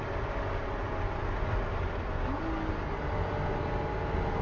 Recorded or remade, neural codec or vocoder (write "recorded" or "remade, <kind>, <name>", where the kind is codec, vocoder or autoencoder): recorded